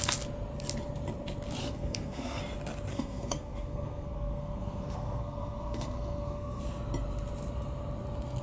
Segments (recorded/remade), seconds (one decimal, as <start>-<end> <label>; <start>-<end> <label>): 0.0-1.6 recorded; 1.6-2.4 remade; 2.4-2.9 recorded; 2.9-6.6 remade; 6.6-8.4 recorded